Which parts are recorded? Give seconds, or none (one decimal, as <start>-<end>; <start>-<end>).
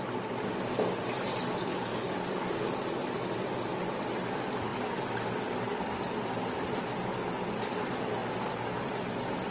0.0-1.9; 3.0-9.5